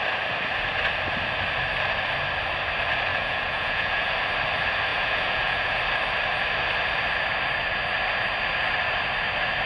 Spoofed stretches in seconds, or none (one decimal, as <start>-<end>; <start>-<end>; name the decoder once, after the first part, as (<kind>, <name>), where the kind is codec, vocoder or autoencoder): 3.1-4.1 (vocoder, Vocos); 4.9-5.8